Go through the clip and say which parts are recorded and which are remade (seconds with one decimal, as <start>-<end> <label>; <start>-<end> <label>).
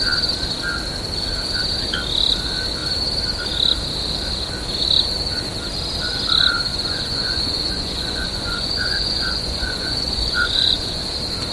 0.0-6.7 recorded; 6.7-11.0 remade; 11.0-11.5 recorded